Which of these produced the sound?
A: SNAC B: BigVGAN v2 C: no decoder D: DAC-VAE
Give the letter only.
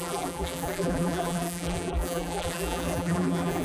B